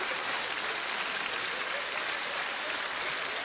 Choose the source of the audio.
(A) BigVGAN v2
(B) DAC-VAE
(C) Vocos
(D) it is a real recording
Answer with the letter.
D